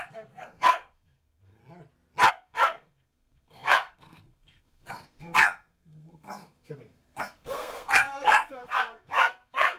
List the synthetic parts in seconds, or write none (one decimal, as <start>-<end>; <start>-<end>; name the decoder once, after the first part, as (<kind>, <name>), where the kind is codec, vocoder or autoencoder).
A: 0.0-1.6 (codec, SNAC); 2.3-9.8